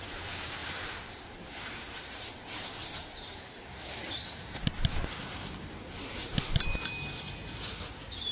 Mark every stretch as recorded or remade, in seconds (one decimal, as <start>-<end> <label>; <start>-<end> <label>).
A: 0.0-8.3 recorded